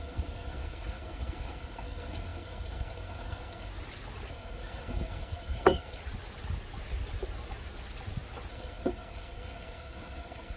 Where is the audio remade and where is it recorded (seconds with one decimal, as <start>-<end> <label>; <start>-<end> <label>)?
0.0-3.7 remade; 3.7-4.3 recorded; 4.3-6.0 remade; 6.0-8.5 recorded; 8.5-10.6 remade